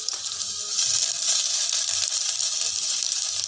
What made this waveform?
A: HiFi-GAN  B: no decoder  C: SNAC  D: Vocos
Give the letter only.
B